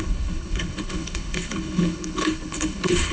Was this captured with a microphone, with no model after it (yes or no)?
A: no